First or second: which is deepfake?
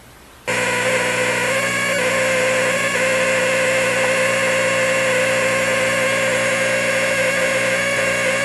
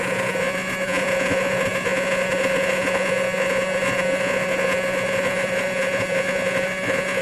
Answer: second